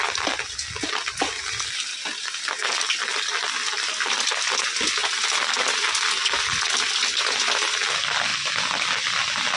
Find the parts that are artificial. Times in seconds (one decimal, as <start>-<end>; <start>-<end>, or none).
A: none